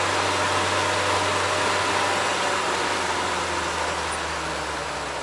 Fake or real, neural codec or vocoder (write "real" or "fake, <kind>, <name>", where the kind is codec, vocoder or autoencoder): real